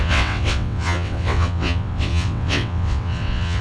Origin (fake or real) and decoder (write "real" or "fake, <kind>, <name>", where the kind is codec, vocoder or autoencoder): fake, vocoder, WaveNeXt